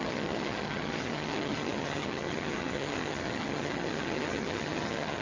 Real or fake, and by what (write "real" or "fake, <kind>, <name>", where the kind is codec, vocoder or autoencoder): fake, vocoder, HiFi-GAN